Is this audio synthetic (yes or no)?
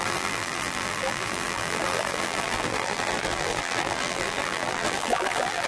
yes